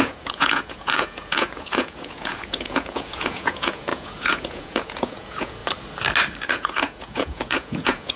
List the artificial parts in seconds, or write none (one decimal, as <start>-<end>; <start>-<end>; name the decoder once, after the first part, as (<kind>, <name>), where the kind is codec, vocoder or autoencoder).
0.0-5.6 (vocoder, Vocos); 6.5-8.2